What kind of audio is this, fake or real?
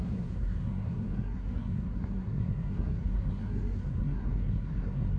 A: fake